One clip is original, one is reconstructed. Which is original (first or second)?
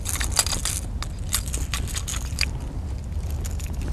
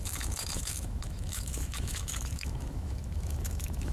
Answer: first